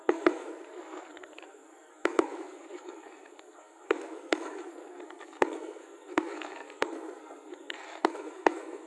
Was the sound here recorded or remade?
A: remade